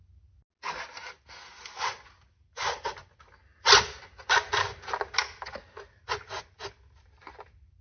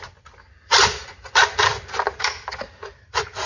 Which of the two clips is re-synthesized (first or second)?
second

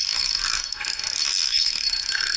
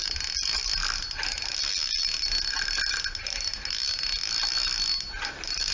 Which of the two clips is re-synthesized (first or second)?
first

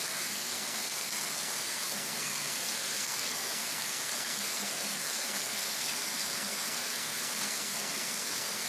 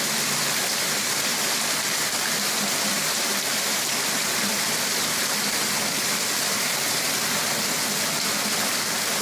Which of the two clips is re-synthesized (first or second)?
first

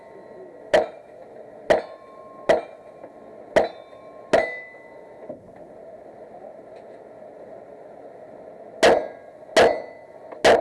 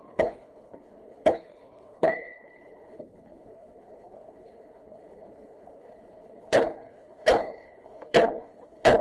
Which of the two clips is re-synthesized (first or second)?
second